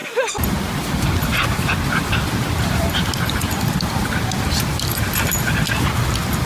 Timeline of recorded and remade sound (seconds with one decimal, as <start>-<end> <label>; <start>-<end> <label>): 0.0-0.6 recorded; 0.6-4.0 remade; 4.0-4.7 recorded; 4.7-6.5 remade